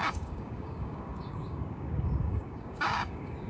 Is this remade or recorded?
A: remade